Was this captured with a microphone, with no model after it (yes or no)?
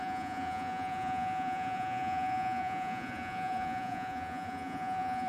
no